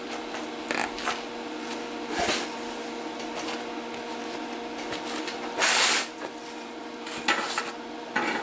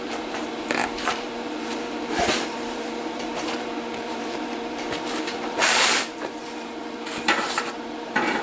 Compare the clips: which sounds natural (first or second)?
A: first